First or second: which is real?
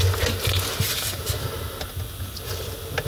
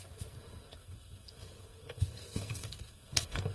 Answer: first